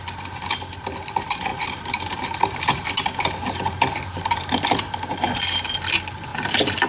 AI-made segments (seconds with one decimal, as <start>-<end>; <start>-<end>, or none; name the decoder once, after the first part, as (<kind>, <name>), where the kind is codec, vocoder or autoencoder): none